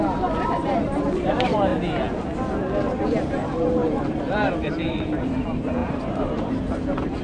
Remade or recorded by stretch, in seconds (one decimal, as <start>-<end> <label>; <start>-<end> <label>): 0.0-1.7 remade; 1.7-3.0 recorded; 3.0-7.2 remade